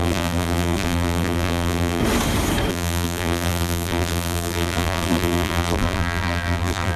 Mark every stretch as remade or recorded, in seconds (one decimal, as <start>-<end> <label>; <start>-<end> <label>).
0.0-2.0 remade; 2.0-2.7 recorded; 2.7-7.0 remade